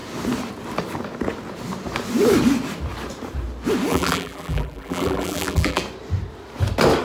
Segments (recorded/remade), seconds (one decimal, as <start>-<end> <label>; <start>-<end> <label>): 0.0-3.9 recorded; 3.9-5.8 remade; 5.8-7.0 recorded